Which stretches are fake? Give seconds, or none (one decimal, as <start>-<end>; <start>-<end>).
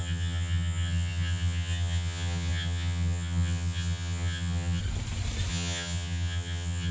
0.0-4.8; 5.5-6.9